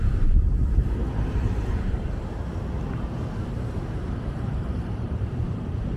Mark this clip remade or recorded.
remade